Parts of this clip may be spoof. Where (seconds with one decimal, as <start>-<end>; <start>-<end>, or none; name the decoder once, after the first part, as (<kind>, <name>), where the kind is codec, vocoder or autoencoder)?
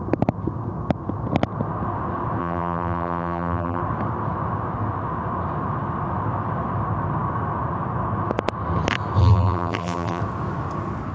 2.4-3.8 (vocoder, BigVGAN v2); 9.2-10.2